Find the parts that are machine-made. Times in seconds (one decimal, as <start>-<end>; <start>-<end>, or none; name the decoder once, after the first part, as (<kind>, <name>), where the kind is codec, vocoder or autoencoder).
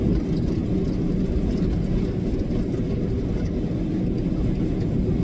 none